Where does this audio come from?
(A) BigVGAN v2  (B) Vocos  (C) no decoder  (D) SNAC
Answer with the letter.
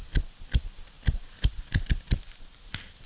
C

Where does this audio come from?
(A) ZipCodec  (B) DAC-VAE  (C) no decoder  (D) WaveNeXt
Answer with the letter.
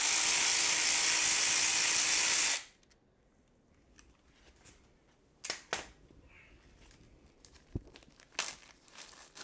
C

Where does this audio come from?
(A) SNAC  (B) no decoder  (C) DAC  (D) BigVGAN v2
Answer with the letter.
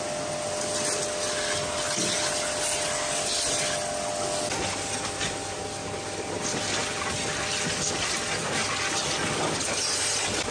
B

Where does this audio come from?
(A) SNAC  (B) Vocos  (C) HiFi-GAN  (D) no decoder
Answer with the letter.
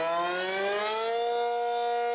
D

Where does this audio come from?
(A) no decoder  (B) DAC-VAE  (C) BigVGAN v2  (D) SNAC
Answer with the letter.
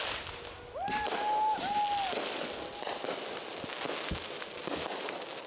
A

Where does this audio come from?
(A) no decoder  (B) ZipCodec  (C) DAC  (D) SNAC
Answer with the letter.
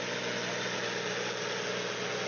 A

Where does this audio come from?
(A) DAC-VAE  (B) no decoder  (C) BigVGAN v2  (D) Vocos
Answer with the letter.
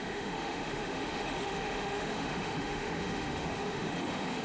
A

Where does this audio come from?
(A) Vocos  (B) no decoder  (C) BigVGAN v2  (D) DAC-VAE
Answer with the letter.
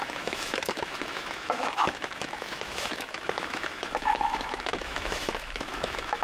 D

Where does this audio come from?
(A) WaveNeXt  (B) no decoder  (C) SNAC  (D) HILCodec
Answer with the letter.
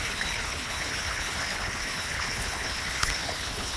D